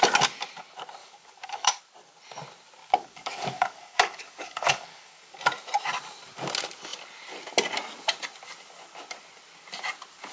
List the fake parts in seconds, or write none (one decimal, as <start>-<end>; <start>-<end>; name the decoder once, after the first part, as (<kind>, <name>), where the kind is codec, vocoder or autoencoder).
1.0-1.8 (codec, DAC); 2.8-5.4